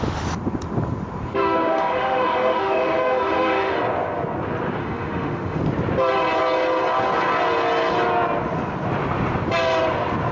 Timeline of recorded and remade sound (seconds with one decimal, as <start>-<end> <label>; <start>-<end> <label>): 0.0-1.4 recorded; 1.4-3.8 remade; 3.8-4.8 recorded; 4.8-5.6 remade; 5.6-10.3 recorded